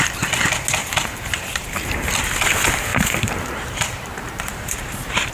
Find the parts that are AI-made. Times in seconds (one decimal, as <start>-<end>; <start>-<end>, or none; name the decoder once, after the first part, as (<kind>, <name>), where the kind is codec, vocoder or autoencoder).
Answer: 0.8-1.7 (vocoder, BigVGAN v2); 2.9-5.3